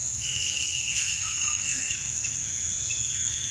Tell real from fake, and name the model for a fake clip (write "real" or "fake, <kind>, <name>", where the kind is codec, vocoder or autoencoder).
fake, codec, SNAC